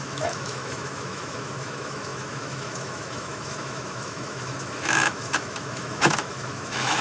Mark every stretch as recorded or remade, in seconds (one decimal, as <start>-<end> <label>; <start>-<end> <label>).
0.0-7.0 remade